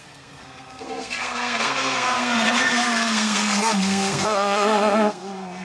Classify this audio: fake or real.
fake